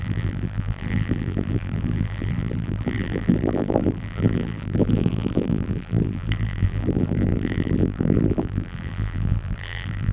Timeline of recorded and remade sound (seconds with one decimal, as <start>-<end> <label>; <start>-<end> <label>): 0.0-10.1 remade